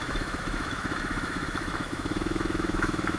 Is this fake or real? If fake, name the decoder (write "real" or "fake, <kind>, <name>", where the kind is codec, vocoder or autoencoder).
fake, autoencoder, DAC-VAE